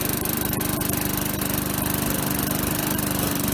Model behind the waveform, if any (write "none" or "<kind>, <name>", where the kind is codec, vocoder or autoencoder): none